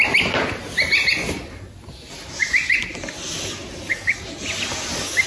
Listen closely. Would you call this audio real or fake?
real